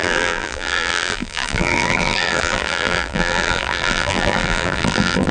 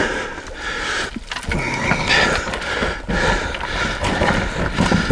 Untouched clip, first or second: second